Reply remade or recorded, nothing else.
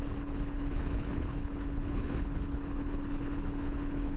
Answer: remade